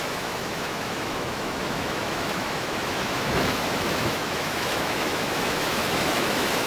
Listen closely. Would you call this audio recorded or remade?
remade